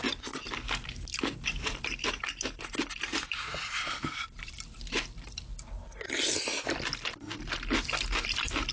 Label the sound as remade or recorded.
recorded